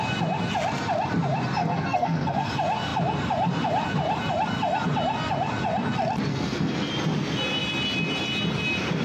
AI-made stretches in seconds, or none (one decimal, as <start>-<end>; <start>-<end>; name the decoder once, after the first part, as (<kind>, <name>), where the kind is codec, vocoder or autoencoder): 1.6-2.5 (codec, SNAC); 6.3-6.9